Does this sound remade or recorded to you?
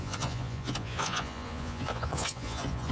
remade